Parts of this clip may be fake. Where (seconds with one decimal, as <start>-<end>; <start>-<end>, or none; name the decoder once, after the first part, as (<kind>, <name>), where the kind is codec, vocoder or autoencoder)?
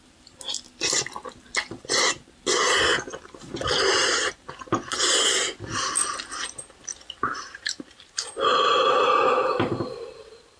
4.0-4.6 (vocoder, BigVGAN v2); 6.9-8.1; 8.5-9.2